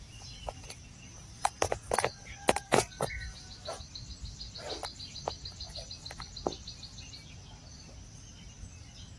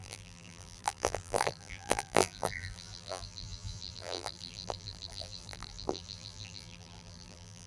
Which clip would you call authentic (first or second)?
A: first